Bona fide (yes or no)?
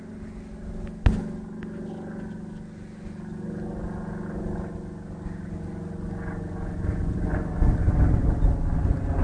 yes